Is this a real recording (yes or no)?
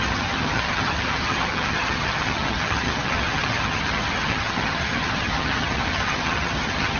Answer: no